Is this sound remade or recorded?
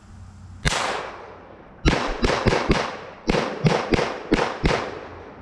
recorded